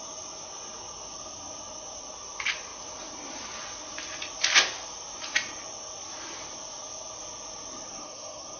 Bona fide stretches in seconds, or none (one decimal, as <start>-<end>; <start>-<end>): 0.0-7.9